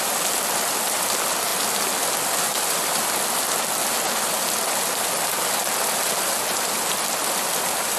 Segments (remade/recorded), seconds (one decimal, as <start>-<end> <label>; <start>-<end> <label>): 0.0-8.0 recorded